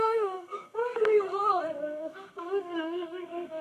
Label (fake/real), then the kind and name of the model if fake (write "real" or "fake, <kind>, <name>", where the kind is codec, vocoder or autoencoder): fake, codec, SNAC